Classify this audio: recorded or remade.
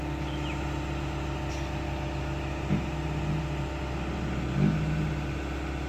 recorded